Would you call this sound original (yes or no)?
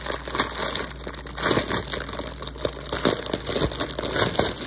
yes